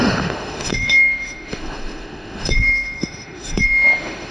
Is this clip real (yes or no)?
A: no